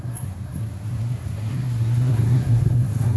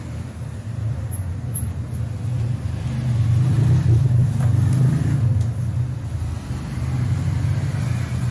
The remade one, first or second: first